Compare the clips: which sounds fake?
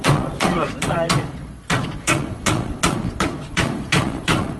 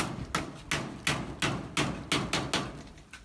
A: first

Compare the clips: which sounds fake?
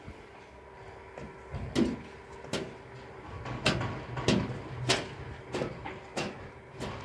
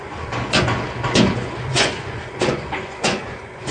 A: second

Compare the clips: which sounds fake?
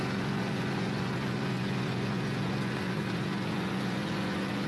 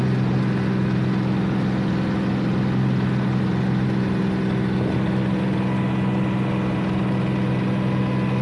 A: first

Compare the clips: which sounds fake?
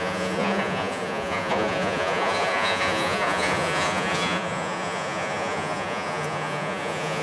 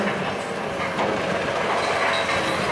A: first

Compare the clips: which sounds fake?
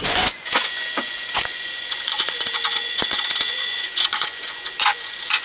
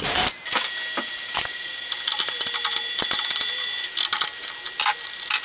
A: first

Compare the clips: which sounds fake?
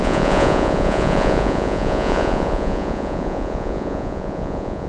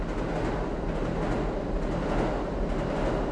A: first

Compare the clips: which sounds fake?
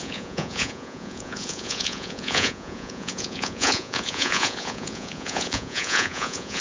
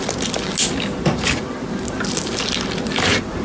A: first